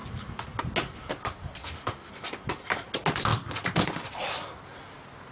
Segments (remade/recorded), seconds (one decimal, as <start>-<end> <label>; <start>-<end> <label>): 0.0-1.6 recorded; 1.6-2.1 remade; 2.1-5.3 recorded